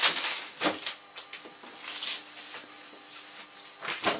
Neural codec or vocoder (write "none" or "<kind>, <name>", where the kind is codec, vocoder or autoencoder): none